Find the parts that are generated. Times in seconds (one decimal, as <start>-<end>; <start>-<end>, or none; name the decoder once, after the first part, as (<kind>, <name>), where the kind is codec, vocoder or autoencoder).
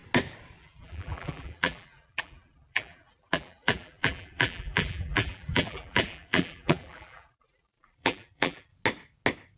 0.6-8.7 (vocoder, BigVGAN v2)